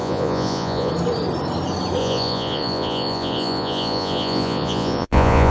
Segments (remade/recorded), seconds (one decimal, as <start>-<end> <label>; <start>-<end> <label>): 0.0-0.9 remade; 0.9-2.0 recorded; 2.0-5.5 remade